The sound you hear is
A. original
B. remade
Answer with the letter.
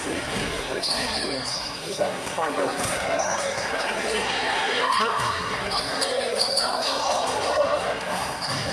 B